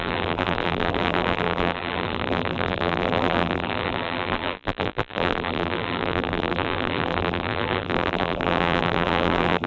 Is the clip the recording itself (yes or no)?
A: no